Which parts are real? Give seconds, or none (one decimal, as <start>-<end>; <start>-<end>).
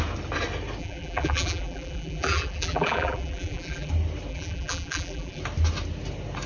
0.0-0.8; 3.9-4.3; 5.4-6.5